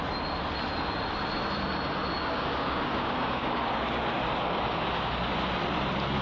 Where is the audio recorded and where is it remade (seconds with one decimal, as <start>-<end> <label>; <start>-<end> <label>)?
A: 0.0-2.1 recorded; 2.1-4.0 remade; 4.0-6.2 recorded